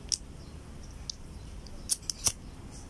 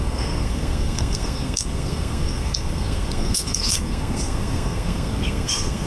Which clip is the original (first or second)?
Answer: first